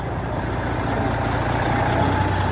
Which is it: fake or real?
real